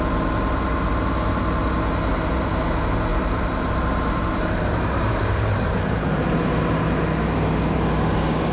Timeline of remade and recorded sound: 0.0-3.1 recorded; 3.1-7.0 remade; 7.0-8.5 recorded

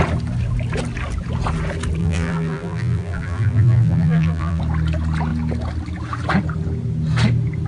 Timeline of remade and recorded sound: 0.0-2.0 recorded; 2.0-4.6 remade; 4.6-7.7 recorded

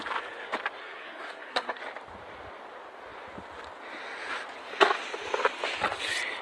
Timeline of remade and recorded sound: 0.0-0.8 recorded; 0.8-1.8 remade; 1.8-6.4 recorded

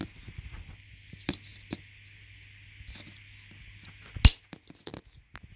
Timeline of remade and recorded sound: 0.0-5.6 recorded

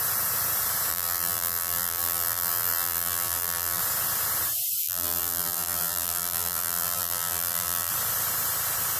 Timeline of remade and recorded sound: 0.0-0.9 recorded; 0.9-3.8 remade; 3.8-4.8 recorded; 4.8-7.9 remade; 7.9-9.0 recorded

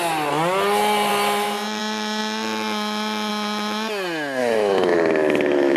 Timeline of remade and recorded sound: 0.0-4.4 recorded; 4.4-5.8 remade

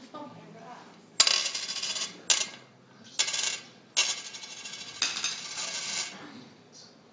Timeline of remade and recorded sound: 0.0-7.1 recorded